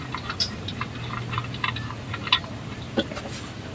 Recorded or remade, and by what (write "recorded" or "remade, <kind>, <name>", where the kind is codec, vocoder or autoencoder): recorded